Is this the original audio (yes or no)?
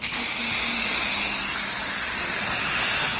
yes